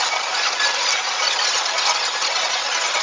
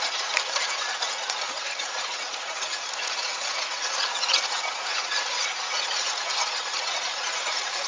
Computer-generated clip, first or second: second